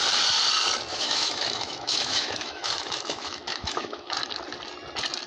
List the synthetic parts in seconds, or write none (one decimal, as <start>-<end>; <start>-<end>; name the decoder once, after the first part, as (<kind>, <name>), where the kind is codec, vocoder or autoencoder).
0.9-4.1 (autoencoder, DAC-VAE)